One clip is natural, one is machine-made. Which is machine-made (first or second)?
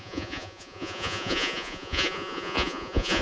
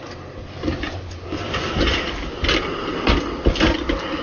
first